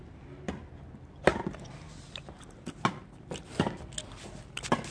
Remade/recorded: recorded